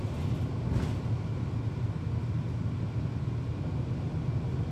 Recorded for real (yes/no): yes